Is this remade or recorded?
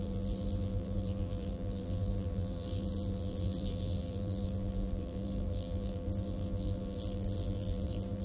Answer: remade